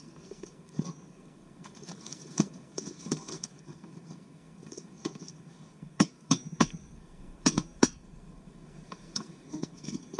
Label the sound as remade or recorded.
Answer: remade